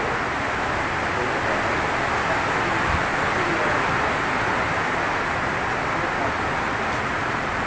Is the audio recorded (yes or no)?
yes